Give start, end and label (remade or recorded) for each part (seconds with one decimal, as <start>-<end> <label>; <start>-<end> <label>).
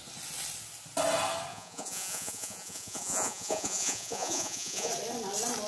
0.0-1.5 recorded; 1.5-4.9 remade; 4.9-5.7 recorded